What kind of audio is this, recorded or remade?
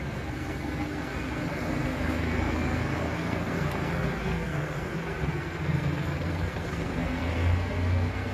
remade